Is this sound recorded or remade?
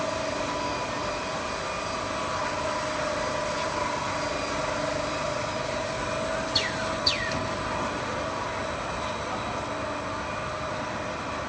recorded